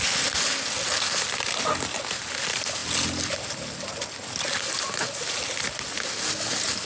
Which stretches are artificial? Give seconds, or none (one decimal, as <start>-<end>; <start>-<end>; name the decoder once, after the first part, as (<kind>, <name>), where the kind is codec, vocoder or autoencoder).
none